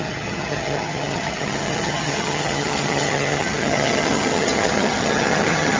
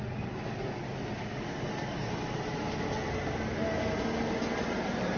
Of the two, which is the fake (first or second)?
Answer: first